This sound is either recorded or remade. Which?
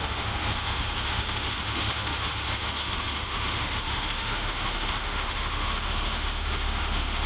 remade